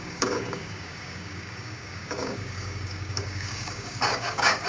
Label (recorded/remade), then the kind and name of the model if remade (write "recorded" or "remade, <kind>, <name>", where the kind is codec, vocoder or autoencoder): remade, codec, DAC